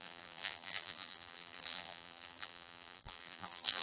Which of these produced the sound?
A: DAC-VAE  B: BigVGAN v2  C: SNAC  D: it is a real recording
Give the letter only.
B